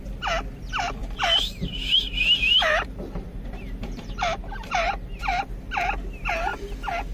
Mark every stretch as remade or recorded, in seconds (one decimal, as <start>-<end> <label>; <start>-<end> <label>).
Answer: 0.0-1.0 recorded; 1.0-5.2 remade; 5.2-7.1 recorded